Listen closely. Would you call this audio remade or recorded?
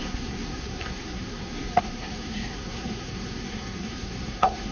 remade